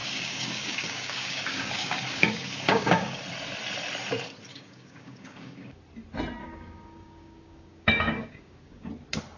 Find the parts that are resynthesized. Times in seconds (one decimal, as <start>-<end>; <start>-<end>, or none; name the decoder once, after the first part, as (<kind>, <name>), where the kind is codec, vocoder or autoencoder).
0.0-3.2 (codec, DAC); 4.5-5.8; 6.4-8.9